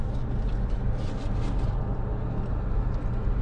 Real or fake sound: real